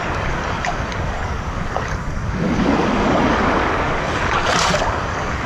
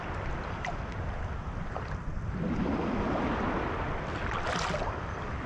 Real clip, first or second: second